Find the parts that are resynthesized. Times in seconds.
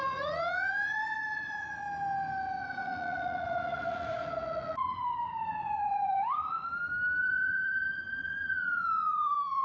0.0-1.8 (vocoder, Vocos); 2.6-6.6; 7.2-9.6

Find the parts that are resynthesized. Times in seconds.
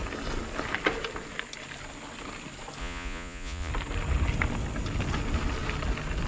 2.8-3.7 (vocoder, Vocos)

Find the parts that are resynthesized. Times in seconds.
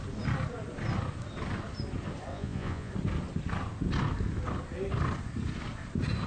2.3-2.9 (vocoder, Vocos)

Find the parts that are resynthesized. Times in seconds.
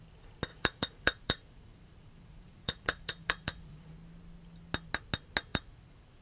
0.5-3.9 (vocoder, Vocos); 5.5-6.2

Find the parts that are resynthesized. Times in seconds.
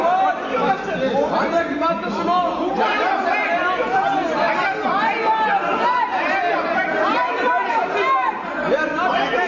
none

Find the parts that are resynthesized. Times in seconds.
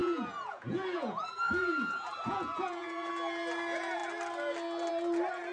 0.0-3.1 (vocoder, Vocos)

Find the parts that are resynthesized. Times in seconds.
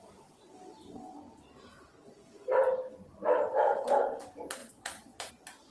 4.6-5.3 (vocoder, Vocos)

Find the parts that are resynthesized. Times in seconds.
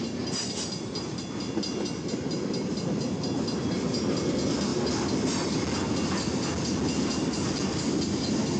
none